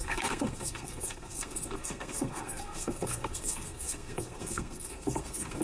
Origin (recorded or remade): remade